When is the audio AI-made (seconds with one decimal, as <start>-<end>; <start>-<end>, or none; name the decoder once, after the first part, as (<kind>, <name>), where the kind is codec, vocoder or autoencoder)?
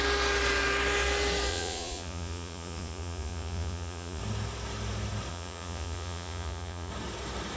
1.5-4.2 (vocoder, Vocos); 5.3-6.9